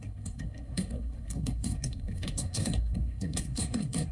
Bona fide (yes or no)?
no